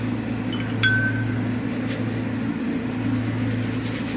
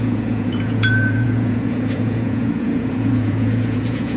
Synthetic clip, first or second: second